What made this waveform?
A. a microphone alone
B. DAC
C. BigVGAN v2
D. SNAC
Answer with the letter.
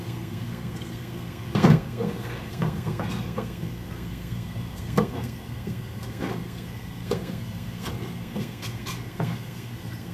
D